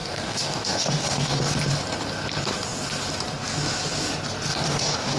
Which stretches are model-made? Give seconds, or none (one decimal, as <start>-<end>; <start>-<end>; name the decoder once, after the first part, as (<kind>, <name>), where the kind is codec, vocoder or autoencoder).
0.0-1.5 (codec, DAC); 4.5-5.2